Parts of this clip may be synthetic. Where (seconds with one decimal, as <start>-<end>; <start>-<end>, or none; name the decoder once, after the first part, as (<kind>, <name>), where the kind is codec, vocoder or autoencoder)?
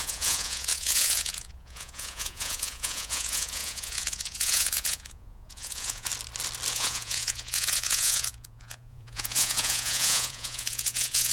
0.0-6.1 (vocoder, Vocos); 6.7-11.3